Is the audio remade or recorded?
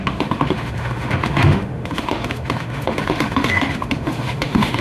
remade